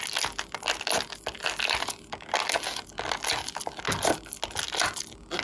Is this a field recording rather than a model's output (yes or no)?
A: yes